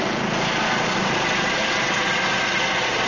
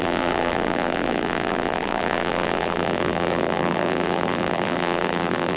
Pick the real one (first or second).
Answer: first